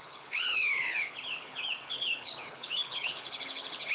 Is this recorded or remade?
remade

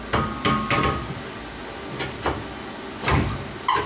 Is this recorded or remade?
recorded